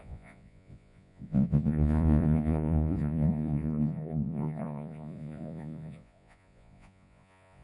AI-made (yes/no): yes